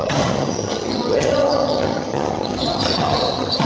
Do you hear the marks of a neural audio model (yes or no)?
yes